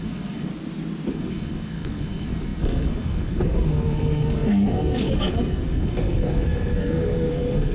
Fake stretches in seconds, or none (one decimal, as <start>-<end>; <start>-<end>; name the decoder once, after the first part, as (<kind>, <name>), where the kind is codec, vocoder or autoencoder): 0.0-0.5 (codec, SNAC); 1.1-7.7

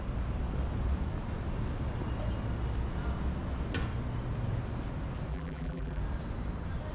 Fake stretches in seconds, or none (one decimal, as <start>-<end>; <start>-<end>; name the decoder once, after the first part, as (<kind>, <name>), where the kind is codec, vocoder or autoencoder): 5.3-6.0 (vocoder, BigVGAN v2)